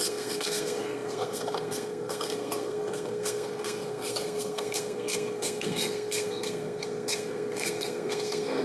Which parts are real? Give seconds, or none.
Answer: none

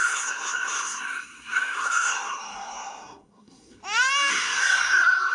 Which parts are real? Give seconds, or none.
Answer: 3.8-4.3

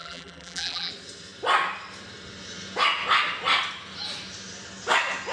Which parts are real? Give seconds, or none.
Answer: 0.9-5.3

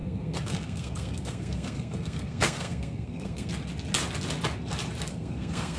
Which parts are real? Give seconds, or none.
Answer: 3.5-5.1

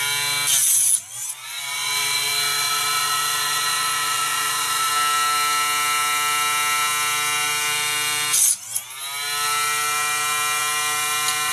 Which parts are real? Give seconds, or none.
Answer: 0.0-0.6; 4.9-11.5

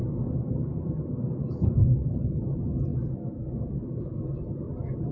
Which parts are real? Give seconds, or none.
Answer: 2.1-2.9; 4.2-5.1

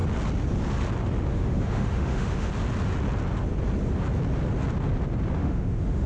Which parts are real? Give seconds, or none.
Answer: 0.0-1.3; 2.5-5.4

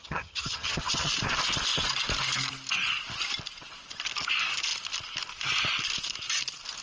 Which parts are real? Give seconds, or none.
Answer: 1.1-6.8